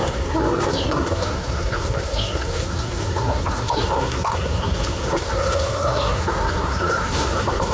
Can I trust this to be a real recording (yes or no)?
no